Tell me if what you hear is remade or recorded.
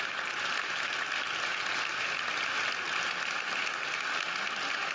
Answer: recorded